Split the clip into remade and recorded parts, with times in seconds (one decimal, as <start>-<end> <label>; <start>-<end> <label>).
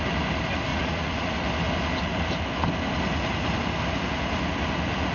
0.0-0.7 recorded; 0.7-1.3 remade; 1.3-5.1 recorded